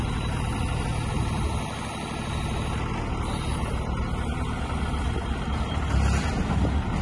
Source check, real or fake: real